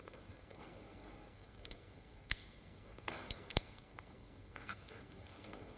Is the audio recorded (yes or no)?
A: no